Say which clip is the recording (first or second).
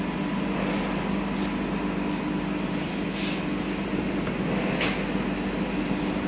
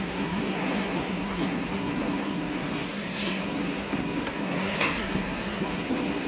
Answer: first